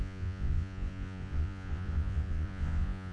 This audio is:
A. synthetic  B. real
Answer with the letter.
A